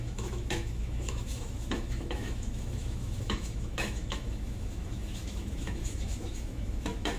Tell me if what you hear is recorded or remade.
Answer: remade